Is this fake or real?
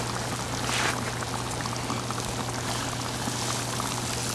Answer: real